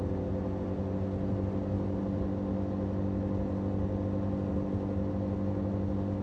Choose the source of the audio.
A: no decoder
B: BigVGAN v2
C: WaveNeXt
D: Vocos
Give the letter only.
A